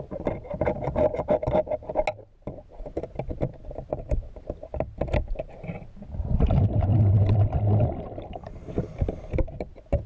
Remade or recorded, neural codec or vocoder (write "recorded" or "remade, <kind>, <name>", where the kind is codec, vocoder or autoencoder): recorded